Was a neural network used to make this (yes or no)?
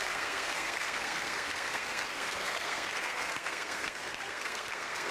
yes